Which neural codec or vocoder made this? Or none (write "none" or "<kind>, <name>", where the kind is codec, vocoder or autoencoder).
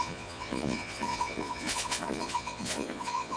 vocoder, Vocos